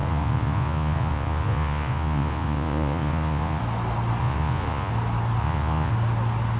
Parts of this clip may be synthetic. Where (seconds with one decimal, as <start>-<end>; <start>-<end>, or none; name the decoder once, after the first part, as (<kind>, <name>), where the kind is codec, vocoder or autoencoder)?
0.0-3.6 (vocoder, Vocos); 4.2-4.9; 5.4-5.9